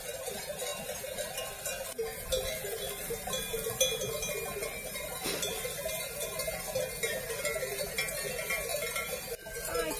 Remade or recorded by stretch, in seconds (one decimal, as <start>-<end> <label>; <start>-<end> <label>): 0.0-10.0 recorded